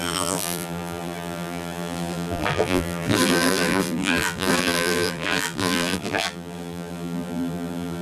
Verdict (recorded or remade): remade